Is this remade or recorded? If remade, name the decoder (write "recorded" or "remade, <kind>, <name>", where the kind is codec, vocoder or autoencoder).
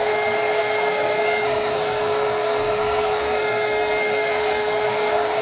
remade, codec, SNAC